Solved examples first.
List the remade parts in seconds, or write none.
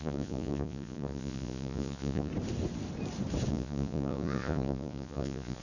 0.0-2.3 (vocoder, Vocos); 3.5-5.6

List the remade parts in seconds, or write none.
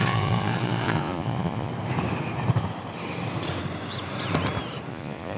0.0-1.7 (vocoder, Vocos); 4.9-5.4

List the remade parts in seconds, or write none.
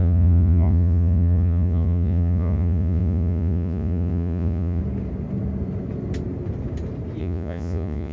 0.0-4.8 (vocoder, Vocos); 7.2-8.1